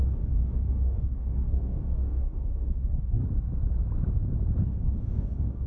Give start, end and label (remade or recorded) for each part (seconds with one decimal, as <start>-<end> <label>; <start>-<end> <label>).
0.0-3.2 remade; 3.2-4.6 recorded; 4.6-5.7 remade